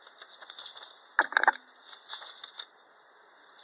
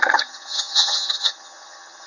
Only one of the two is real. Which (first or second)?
first